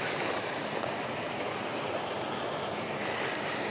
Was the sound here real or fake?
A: real